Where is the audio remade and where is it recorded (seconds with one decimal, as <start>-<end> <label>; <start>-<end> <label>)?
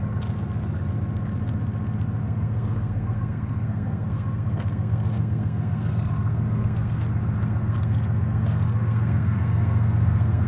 0.0-2.2 recorded; 2.2-7.0 remade; 7.0-7.4 recorded; 7.4-10.5 remade